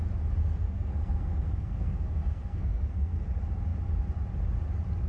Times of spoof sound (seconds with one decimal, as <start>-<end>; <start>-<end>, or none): 0.4-3.3